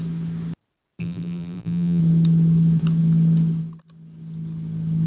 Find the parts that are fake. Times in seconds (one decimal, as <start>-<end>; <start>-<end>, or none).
1.0-2.0